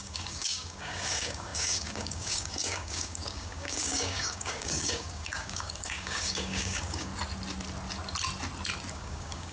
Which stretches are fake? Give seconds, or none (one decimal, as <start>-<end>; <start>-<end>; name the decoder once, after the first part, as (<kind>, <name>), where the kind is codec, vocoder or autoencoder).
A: 0.0-7.1 (codec, DAC); 8.9-9.5